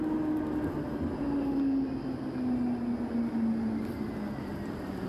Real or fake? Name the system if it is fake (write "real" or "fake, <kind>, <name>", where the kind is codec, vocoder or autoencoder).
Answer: real